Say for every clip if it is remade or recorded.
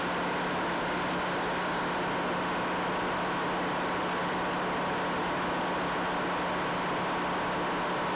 recorded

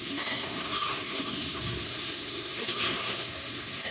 remade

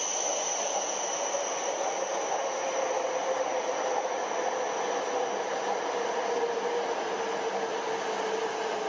recorded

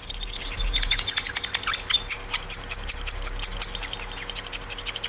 recorded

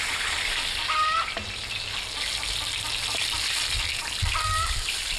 recorded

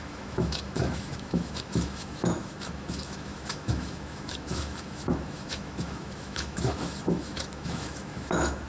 remade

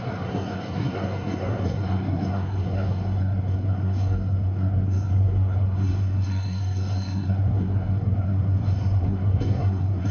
remade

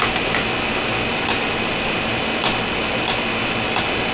recorded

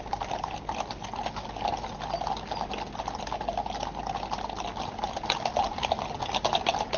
recorded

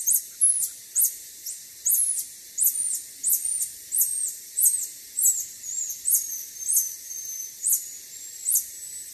recorded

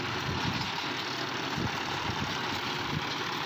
recorded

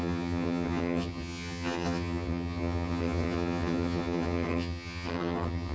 remade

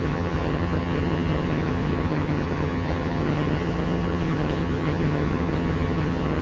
remade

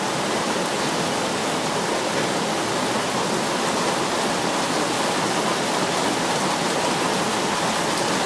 recorded